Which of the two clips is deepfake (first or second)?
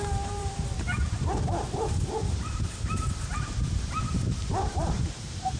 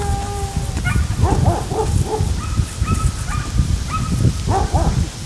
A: first